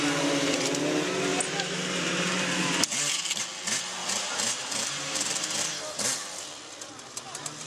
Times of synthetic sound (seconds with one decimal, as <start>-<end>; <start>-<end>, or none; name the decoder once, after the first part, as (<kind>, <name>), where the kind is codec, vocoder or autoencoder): 1.3-3.4 (vocoder, BigVGAN v2); 4.0-6.0